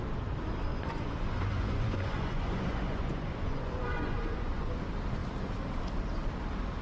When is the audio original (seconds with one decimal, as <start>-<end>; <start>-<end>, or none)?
0.0-0.7; 4.8-6.8